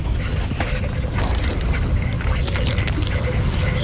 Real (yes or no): yes